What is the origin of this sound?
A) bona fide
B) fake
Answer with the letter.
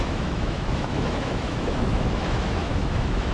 B